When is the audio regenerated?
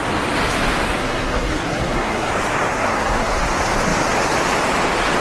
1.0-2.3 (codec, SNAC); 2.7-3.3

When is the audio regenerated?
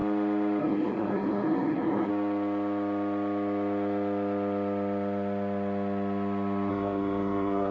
0.6-2.1 (codec, SNAC); 6.7-7.7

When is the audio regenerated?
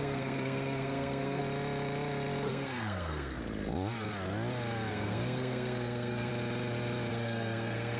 0.0-1.4 (codec, SNAC); 2.5-3.4; 4.9-6.3; 7.1-8.0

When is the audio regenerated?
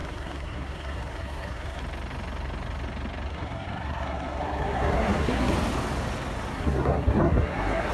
0.0-1.8 (codec, SNAC); 3.3-5.5; 6.5-7.9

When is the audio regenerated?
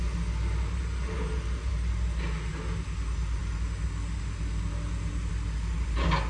none